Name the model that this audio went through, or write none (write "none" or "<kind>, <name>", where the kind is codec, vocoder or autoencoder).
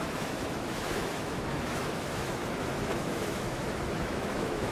autoencoder, DAC-VAE